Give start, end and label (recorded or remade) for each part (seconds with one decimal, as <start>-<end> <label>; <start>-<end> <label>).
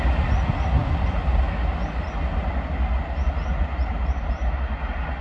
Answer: 0.0-5.2 recorded